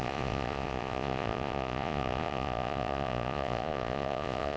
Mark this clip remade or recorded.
remade